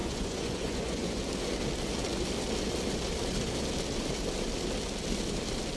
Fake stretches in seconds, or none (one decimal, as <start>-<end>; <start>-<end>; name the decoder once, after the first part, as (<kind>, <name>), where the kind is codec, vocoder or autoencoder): 0.0-1.2 (vocoder, Vocos)